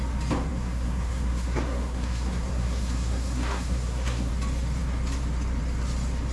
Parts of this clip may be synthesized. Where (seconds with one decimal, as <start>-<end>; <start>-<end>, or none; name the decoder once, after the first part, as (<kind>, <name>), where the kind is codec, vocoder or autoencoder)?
0.5-4.3 (codec, SNAC)

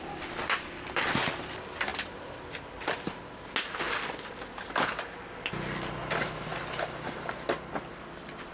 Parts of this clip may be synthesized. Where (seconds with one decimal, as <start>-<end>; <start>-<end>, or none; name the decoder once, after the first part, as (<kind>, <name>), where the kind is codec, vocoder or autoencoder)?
none

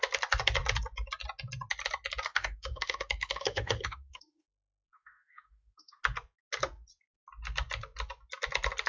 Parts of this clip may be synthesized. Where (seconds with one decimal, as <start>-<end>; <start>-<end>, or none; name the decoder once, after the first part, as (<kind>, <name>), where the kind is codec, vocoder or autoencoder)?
2.3-6.0 (autoencoder, DAC-VAE)

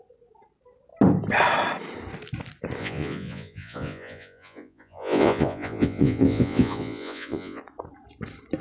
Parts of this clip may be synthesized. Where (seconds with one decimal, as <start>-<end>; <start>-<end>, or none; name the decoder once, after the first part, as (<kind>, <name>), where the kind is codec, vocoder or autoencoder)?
2.8-7.6 (vocoder, Vocos)

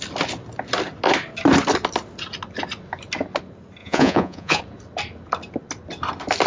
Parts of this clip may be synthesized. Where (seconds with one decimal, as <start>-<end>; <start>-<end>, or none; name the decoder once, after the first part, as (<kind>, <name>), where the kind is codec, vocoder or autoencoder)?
3.8-4.6 (vocoder, Vocos)

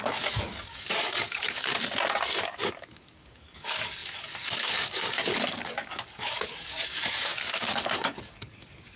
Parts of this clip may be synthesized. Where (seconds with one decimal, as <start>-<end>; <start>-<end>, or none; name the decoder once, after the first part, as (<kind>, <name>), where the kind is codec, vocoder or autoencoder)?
0.0-1.7 (codec, DAC); 2.4-9.0

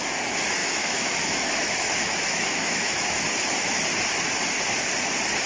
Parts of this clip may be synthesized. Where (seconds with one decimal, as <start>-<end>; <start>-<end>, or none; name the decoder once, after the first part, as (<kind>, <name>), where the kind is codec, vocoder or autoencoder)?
0.6-3.2 (autoencoder, DAC-VAE)

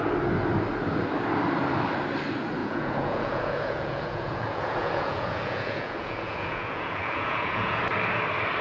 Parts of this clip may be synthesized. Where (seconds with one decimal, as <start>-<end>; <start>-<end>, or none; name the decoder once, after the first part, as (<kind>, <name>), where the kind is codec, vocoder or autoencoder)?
2.6-7.8 (vocoder, Vocos)